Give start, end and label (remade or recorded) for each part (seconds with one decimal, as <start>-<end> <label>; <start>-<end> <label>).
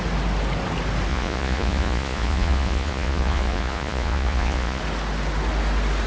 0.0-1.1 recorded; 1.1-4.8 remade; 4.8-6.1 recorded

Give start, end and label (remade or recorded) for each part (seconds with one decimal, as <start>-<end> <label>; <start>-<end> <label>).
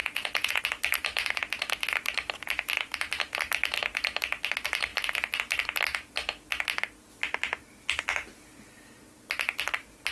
0.0-0.6 remade; 0.6-10.1 recorded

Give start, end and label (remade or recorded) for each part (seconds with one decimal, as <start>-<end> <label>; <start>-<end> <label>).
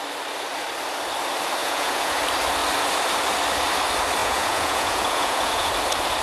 0.0-1.6 recorded; 1.6-2.2 remade; 2.2-4.2 recorded; 4.2-5.7 remade; 5.7-6.2 recorded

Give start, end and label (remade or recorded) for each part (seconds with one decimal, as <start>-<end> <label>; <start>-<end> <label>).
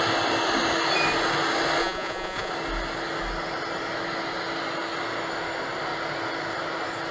0.0-1.8 recorded; 1.8-2.5 remade; 2.5-7.1 recorded